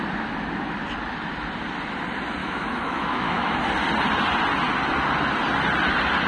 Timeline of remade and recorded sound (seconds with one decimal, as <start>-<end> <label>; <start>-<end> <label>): 0.0-2.4 recorded; 2.4-3.6 remade; 3.6-6.3 recorded

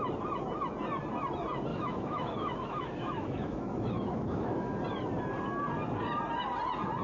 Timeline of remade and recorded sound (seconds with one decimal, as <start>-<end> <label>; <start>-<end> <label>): 0.0-1.7 recorded; 1.7-4.8 remade; 4.8-7.0 recorded

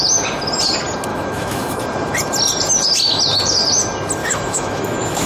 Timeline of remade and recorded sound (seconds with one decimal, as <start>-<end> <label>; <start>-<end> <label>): 0.0-1.1 recorded; 1.1-1.8 remade; 1.8-4.2 recorded; 4.2-5.3 remade

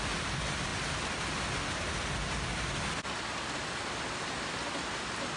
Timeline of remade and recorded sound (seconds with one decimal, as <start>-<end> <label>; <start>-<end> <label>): 0.0-5.4 recorded

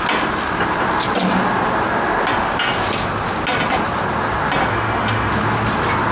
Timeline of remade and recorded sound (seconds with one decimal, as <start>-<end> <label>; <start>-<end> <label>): 0.0-4.7 recorded; 4.7-5.3 remade; 5.3-6.1 recorded